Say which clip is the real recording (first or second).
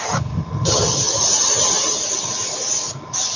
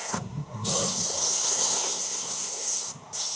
first